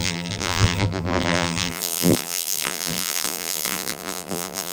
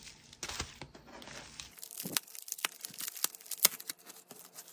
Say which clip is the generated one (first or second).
first